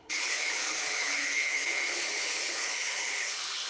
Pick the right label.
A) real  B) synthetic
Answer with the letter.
B